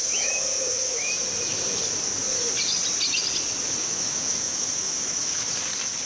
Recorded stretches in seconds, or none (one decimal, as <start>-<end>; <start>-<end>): 1.1-3.8; 5.5-6.1